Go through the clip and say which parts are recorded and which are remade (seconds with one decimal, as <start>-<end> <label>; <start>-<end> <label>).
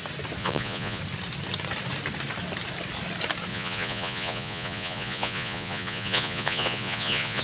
0.0-0.4 recorded; 0.4-1.0 remade; 1.0-3.5 recorded; 3.5-7.4 remade